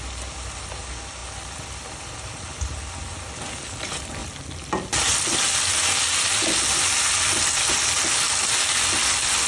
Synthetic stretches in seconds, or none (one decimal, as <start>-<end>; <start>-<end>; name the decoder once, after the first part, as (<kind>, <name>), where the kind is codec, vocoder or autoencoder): none